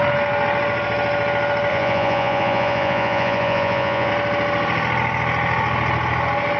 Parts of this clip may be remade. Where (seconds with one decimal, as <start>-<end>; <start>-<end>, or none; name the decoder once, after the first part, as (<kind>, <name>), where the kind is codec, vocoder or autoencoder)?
1.7-4.1 (vocoder, Vocos)

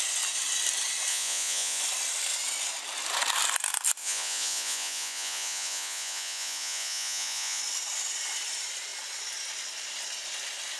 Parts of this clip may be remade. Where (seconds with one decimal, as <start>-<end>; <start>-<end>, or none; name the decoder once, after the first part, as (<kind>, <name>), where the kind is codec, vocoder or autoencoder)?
1.1-1.8 (vocoder, Vocos); 4.0-7.6

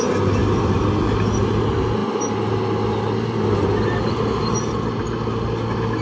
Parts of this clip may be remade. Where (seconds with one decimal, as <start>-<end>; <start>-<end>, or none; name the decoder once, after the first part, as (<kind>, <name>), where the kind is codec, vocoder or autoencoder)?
none

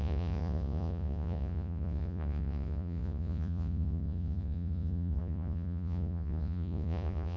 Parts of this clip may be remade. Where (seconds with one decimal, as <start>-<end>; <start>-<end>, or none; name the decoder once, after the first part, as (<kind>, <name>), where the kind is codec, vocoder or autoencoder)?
0.0-7.4 (vocoder, Vocos)

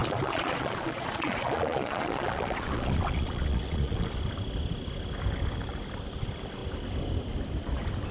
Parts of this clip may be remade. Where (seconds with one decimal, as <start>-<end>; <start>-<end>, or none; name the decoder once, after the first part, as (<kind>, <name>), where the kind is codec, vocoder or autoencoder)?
0.0-4.2 (vocoder, Vocos)

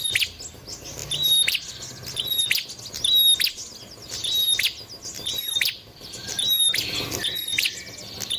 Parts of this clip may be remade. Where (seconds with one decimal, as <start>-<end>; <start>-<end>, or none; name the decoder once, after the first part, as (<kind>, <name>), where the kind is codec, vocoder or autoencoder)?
none